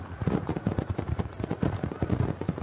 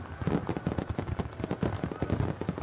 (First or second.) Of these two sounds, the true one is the second